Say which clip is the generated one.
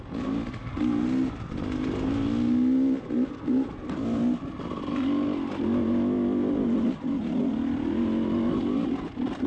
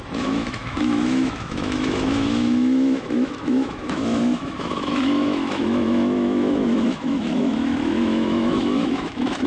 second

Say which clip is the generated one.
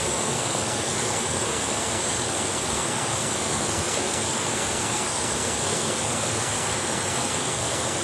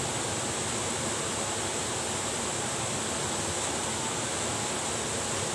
first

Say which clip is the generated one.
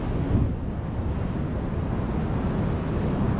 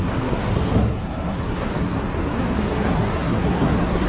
second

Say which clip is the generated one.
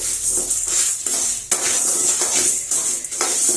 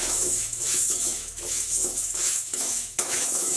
second